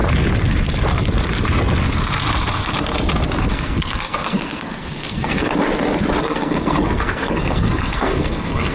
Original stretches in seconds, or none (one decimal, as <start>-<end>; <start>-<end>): 0.0-3.5; 5.5-6.2